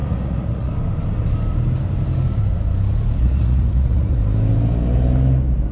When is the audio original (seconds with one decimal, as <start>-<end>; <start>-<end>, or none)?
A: 0.7-3.2; 4.2-5.7